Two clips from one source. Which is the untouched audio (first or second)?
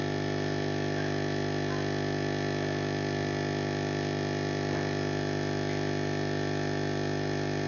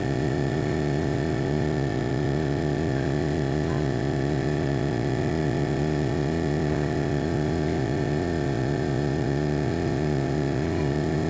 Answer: first